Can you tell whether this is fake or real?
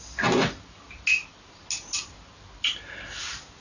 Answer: real